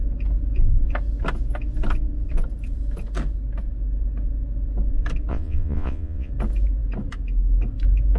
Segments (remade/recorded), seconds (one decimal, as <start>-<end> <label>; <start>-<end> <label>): 0.0-5.3 recorded; 5.3-6.3 remade; 6.3-8.2 recorded